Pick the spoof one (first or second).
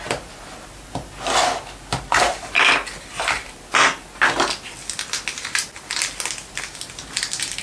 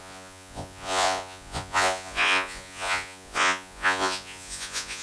second